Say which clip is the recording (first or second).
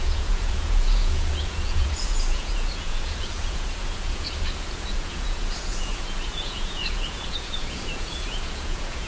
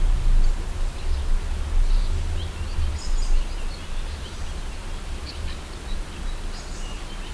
second